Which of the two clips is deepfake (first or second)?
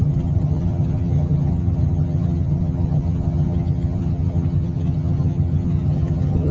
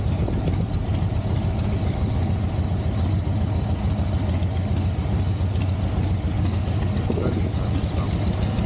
first